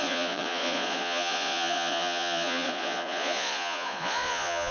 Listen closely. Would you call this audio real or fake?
fake